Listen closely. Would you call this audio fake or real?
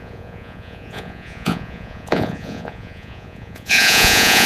fake